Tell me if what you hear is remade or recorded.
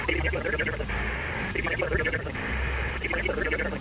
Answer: recorded